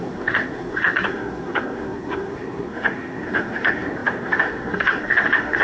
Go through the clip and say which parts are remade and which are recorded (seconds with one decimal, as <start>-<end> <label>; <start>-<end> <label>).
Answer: 0.0-5.6 remade

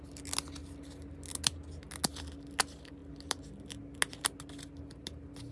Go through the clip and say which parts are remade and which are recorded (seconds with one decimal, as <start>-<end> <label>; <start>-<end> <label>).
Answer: 0.0-5.5 recorded

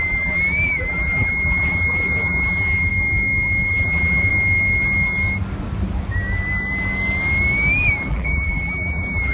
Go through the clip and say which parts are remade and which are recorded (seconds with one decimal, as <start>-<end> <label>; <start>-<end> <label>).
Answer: 0.0-2.9 remade; 2.9-3.7 recorded; 3.7-4.3 remade; 4.3-8.1 recorded; 8.1-9.3 remade

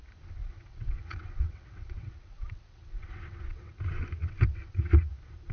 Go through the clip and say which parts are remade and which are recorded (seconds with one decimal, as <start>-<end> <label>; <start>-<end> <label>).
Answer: 0.0-0.4 recorded; 0.4-3.7 remade; 3.7-4.2 recorded; 4.2-5.1 remade; 5.1-5.5 recorded

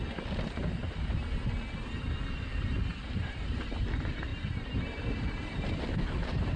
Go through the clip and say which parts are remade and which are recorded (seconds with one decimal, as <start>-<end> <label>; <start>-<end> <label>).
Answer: 0.0-2.5 recorded; 2.5-3.8 remade; 3.8-4.3 recorded; 4.3-6.6 remade

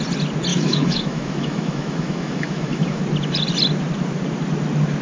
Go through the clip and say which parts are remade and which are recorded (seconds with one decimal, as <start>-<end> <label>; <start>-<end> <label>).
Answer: 0.0-0.5 recorded; 0.5-3.0 remade; 3.0-5.0 recorded